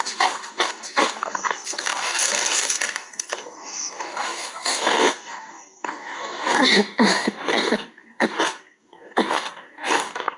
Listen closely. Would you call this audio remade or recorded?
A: remade